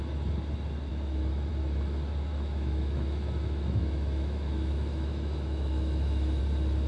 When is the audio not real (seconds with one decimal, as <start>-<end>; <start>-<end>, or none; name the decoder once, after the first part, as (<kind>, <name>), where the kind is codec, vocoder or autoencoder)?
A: 0.9-1.5 (autoencoder, DAC-VAE); 2.3-6.4